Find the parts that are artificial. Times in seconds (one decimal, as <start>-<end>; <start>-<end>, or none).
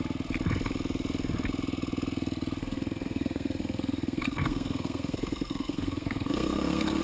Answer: 2.6-7.0